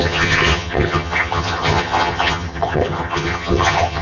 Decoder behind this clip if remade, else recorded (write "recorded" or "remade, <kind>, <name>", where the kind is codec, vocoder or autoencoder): remade, vocoder, HiFi-GAN